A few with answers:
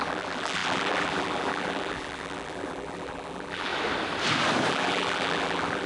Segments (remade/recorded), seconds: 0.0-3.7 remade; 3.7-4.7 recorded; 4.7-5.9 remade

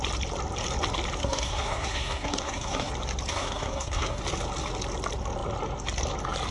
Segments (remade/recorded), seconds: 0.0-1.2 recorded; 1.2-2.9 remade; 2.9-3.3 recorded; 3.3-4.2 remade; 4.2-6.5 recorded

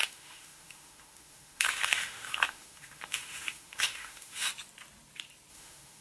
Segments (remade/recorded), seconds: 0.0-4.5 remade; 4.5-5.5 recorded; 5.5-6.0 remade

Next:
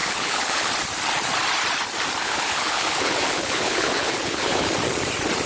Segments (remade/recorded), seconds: 0.0-0.7 remade; 0.7-2.2 recorded; 2.2-4.7 remade; 4.7-5.5 recorded

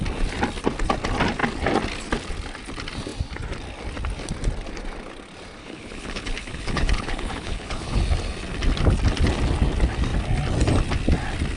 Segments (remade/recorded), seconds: 0.0-5.6 recorded; 5.6-8.0 remade; 8.0-11.6 recorded